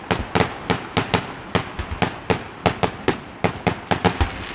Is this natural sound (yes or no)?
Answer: yes